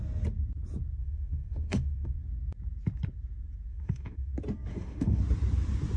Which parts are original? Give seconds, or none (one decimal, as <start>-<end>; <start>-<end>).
0.0-1.0; 2.1-3.7; 4.3-4.7; 5.2-6.0